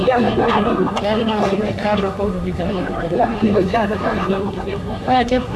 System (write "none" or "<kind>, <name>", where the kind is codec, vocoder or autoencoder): codec, SNAC